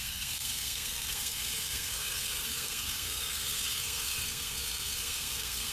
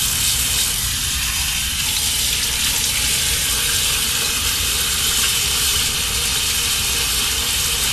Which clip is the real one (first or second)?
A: second